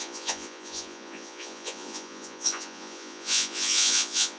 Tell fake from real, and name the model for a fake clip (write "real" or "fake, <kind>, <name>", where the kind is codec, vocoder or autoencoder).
fake, vocoder, Vocos